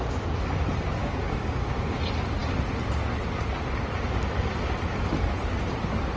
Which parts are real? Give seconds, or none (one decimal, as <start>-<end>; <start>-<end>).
0.0-1.0; 2.0-6.2